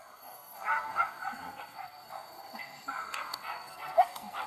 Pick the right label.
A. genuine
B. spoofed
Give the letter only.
B